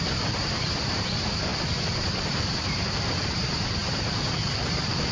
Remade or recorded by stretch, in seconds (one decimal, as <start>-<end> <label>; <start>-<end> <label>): 0.0-3.8 remade; 3.8-4.5 recorded; 4.5-5.1 remade